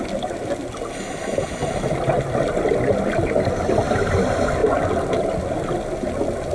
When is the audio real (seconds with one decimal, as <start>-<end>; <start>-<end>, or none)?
0.0-6.5